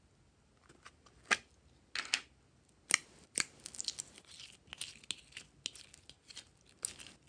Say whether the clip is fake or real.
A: real